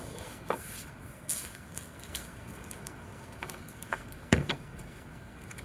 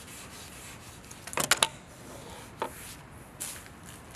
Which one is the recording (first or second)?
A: second